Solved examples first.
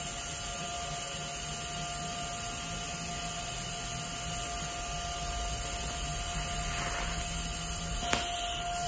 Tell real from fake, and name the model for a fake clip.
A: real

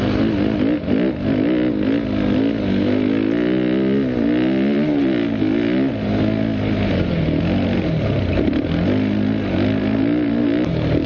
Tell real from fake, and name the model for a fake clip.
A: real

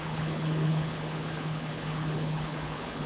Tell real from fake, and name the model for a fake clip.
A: fake, codec, HILCodec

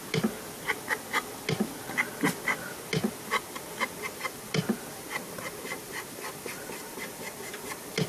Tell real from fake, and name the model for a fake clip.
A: real